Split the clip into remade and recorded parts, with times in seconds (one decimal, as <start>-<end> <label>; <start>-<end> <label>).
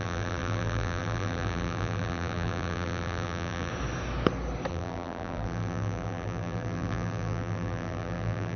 0.0-3.7 remade; 3.7-4.7 recorded; 4.7-8.6 remade